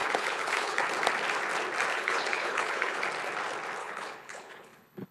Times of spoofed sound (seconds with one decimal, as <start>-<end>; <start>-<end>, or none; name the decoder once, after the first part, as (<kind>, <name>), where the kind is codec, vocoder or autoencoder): 0.0-0.8 (codec, HILCodec); 1.9-3.0; 3.8-5.1